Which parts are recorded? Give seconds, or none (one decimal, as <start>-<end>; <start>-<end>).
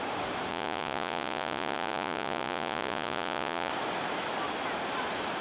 0.0-0.5; 3.7-5.4